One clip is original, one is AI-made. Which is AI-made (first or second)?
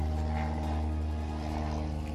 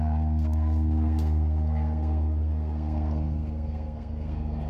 second